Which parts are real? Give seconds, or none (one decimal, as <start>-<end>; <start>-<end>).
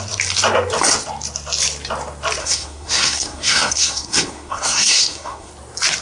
0.0-2.4; 5.5-6.0